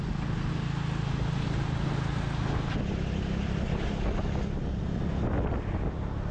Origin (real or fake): real